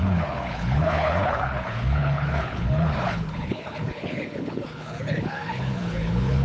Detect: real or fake fake